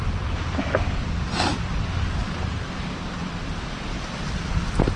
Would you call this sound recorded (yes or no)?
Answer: no